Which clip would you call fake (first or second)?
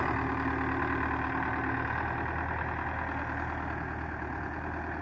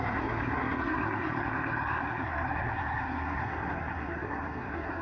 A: second